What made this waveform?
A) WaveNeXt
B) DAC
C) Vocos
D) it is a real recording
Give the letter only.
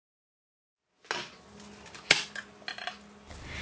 D